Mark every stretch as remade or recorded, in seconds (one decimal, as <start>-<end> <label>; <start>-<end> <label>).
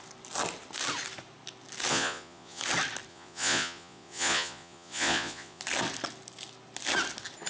0.0-1.9 recorded; 1.9-2.6 remade; 2.6-3.1 recorded; 3.1-5.6 remade; 5.6-7.5 recorded